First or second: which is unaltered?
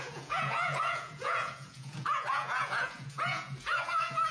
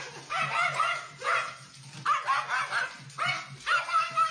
second